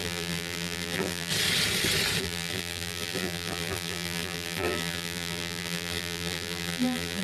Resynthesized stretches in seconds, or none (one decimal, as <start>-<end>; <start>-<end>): 0.0-1.3; 2.2-7.2